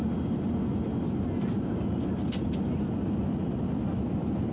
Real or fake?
real